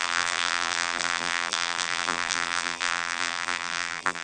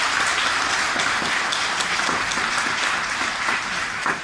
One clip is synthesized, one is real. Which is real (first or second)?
second